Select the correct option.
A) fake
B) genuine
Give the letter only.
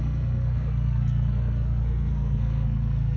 A